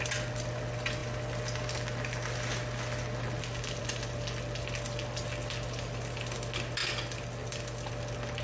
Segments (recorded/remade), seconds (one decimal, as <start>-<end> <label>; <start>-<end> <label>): 0.0-8.4 recorded